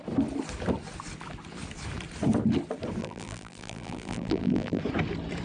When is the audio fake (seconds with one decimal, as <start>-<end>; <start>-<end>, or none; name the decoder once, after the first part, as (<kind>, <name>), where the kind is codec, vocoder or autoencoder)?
3.0-4.8 (vocoder, BigVGAN v2)